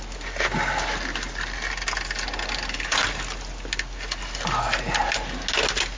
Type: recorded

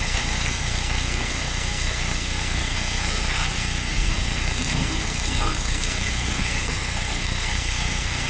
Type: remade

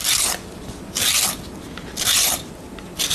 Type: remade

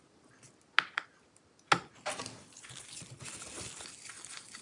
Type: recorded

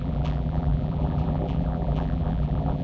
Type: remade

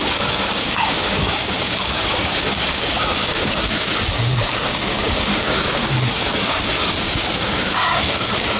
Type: remade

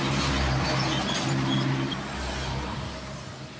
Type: recorded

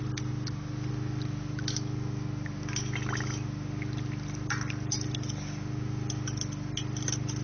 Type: recorded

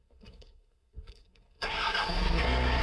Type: remade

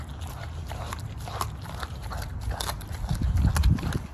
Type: recorded